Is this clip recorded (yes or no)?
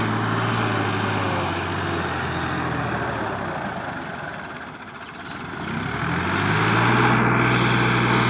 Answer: yes